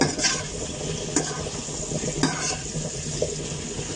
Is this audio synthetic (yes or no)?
no